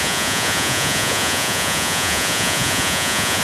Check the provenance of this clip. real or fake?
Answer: fake